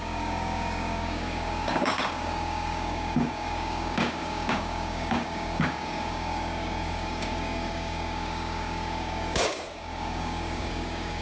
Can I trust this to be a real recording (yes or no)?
no